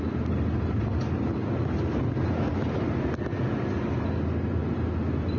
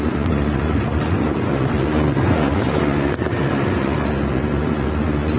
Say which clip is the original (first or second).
first